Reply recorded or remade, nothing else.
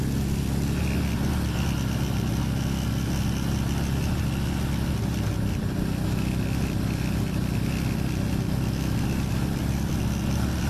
recorded